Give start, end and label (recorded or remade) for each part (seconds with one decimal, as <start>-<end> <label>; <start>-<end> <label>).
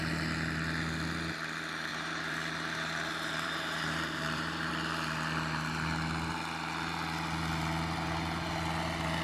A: 0.0-1.9 recorded; 1.9-4.7 remade; 4.7-9.2 recorded